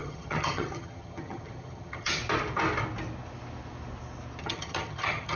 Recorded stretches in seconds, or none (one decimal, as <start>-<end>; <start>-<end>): 2.2-4.4